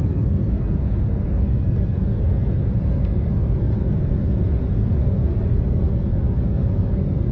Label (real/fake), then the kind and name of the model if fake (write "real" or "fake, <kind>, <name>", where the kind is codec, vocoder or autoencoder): fake, codec, SNAC